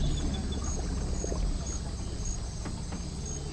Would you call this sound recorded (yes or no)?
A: yes